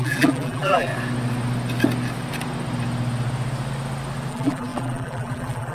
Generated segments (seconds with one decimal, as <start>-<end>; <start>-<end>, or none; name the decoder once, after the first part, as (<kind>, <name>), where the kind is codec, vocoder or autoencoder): 0.0-0.9 (vocoder, BigVGAN v2); 4.3-5.7

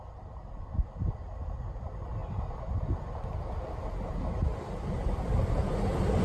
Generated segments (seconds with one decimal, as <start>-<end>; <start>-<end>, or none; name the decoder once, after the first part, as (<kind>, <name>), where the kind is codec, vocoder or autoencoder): 0.0-2.2 (vocoder, BigVGAN v2); 5.0-6.2

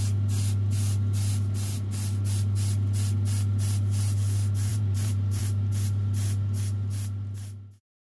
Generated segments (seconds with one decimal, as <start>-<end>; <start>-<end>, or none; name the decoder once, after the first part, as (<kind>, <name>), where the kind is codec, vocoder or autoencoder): 4.7-5.4 (vocoder, BigVGAN v2)

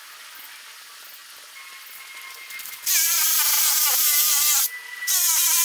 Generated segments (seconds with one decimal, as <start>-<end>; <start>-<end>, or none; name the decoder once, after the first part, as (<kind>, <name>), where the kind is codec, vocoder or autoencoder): none